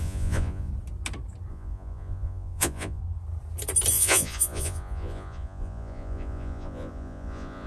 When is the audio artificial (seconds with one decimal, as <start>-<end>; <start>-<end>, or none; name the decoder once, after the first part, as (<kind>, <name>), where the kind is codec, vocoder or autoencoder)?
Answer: 0.0-0.7 (vocoder, Vocos); 1.5-3.0; 3.9-7.7